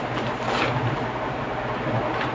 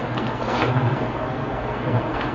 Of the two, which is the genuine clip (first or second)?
first